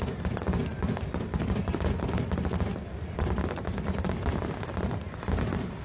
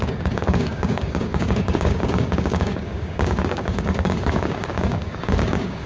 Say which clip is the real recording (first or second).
first